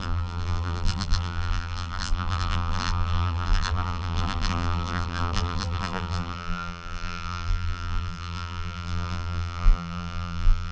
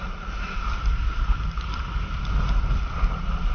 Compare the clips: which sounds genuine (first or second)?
second